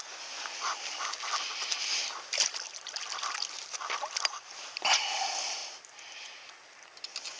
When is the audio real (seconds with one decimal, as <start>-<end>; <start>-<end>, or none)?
0.0-5.6; 6.5-7.4